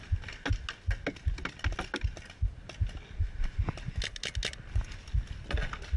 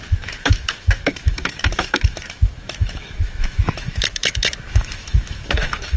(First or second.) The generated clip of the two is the second